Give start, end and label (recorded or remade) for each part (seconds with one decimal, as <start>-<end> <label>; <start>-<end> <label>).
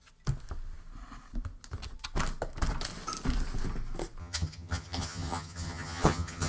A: 0.0-4.2 recorded; 4.2-6.5 remade